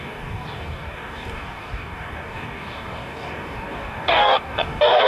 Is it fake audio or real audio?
fake